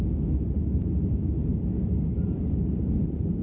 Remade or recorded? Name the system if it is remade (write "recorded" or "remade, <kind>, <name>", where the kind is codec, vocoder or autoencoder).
remade, vocoder, BigVGAN v2